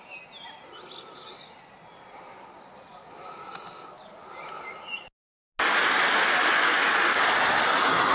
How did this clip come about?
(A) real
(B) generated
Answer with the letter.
A